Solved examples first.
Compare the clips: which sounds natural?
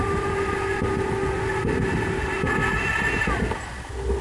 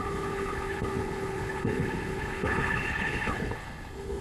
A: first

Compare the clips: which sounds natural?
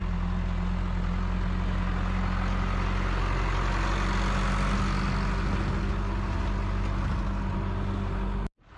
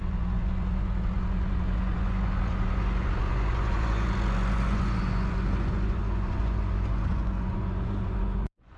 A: first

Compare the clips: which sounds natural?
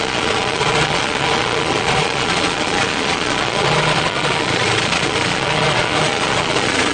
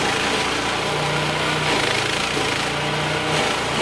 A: second